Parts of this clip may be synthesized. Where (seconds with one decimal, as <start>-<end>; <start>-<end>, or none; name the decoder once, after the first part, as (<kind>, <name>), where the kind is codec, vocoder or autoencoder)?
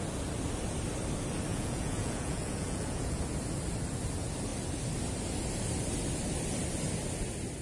1.5-3.2 (vocoder, Vocos)